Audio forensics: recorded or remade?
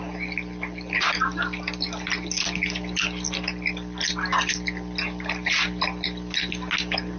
recorded